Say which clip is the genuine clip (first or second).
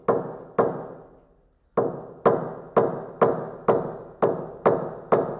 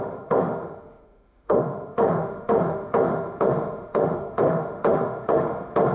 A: first